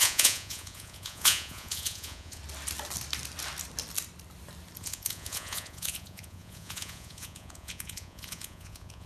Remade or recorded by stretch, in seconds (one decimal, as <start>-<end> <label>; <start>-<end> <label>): 0.0-2.4 remade; 2.4-4.8 recorded; 4.8-9.1 remade